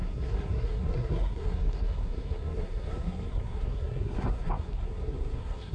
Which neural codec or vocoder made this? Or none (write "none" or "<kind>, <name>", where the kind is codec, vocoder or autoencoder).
codec, SNAC